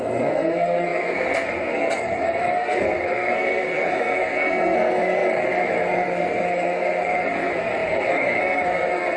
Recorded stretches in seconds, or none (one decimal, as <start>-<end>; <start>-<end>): none